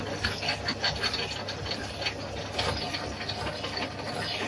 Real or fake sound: real